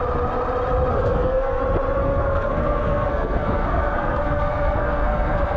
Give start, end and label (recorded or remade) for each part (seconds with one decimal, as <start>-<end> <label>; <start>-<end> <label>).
0.0-0.9 recorded; 0.9-1.6 remade; 1.6-2.0 recorded; 2.0-5.6 remade

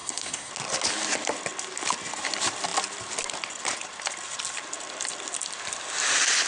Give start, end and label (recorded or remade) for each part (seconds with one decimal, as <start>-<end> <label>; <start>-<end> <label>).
0.0-0.5 remade; 0.5-6.5 recorded

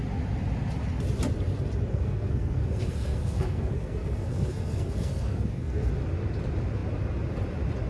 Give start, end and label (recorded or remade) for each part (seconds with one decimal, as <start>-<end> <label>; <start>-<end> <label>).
0.0-1.9 recorded; 1.9-5.9 remade; 5.9-7.9 recorded

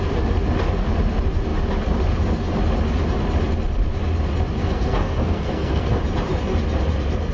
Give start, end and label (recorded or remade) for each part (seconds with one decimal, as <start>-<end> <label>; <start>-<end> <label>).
0.0-4.6 recorded; 4.6-6.0 remade; 6.0-7.3 recorded

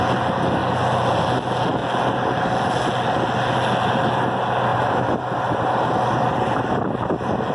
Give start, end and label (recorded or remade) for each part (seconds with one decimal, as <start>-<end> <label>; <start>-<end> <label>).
0.0-7.5 recorded